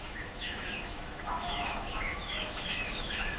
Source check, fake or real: fake